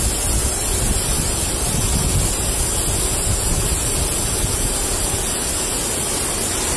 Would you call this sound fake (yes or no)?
no